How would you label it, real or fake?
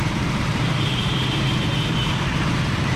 fake